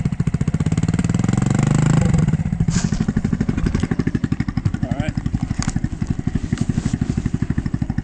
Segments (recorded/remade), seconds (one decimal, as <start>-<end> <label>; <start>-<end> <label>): 0.0-1.0 recorded; 1.0-2.2 remade; 2.2-4.2 recorded; 4.2-6.2 remade; 6.2-8.0 recorded